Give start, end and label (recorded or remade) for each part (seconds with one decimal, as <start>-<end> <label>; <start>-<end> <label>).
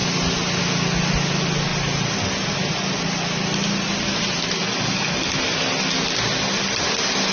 0.0-7.3 recorded